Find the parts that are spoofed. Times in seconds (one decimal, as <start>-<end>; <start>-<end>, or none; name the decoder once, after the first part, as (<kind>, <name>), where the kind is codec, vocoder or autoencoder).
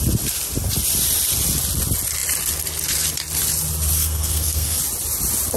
4.0-4.8 (codec, SNAC)